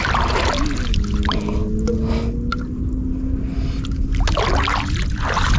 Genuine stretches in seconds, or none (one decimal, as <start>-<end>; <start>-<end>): 0.0-5.6